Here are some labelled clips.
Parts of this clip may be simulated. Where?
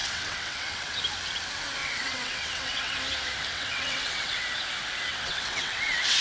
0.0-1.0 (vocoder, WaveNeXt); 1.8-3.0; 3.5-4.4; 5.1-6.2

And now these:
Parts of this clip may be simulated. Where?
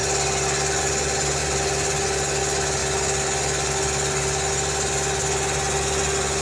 none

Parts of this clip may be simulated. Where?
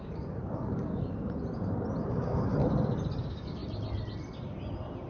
0.0-0.9 (codec, DAC); 2.1-2.6; 3.2-3.6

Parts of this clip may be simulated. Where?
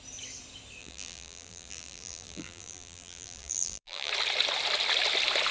0.8-4.1 (vocoder, BigVGAN v2)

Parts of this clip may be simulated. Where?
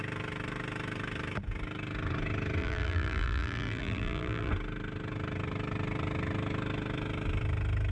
2.6-4.5 (vocoder, BigVGAN v2)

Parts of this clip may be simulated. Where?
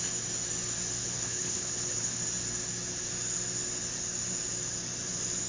1.0-2.2 (codec, HILCodec)